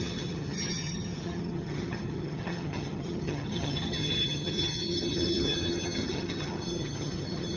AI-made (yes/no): yes